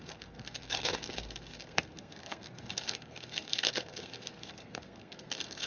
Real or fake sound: fake